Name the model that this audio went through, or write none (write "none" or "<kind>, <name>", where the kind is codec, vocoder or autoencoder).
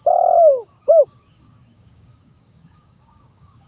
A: codec, DAC